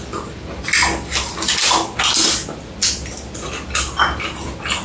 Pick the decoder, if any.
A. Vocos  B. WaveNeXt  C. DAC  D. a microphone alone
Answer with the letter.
D